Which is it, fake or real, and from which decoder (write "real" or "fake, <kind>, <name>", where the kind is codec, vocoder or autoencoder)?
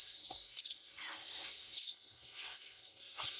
fake, codec, SNAC